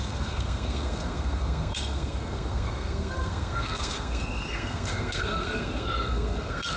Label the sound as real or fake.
fake